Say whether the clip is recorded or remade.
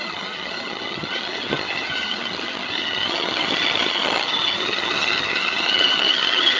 remade